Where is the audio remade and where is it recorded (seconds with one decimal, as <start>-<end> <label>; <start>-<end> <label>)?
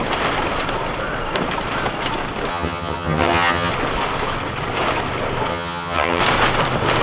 0.0-2.5 recorded; 2.5-3.7 remade; 3.7-5.5 recorded; 5.5-6.2 remade; 6.2-7.0 recorded